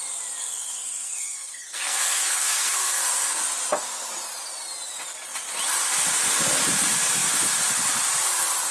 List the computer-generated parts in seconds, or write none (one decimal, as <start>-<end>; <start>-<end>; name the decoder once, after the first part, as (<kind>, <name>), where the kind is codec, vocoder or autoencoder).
0.4-3.4 (codec, SNAC)